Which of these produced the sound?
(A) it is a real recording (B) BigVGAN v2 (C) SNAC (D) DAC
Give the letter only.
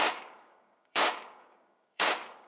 D